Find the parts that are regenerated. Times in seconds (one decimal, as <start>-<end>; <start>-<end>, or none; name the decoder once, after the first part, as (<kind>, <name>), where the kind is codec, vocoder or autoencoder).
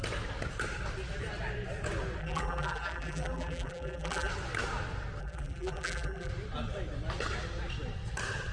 2.2-4.3 (vocoder, BigVGAN v2); 5.2-6.3